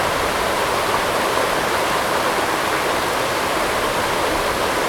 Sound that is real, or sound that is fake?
real